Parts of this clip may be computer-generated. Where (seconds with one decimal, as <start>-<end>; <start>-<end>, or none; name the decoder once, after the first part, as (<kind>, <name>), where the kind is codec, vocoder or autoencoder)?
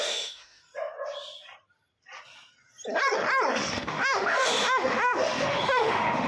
0.0-0.6 (autoencoder, DAC-VAE); 3.7-6.3